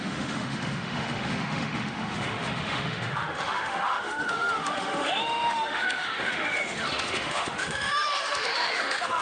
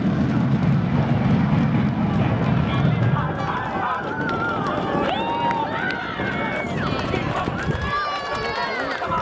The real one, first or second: second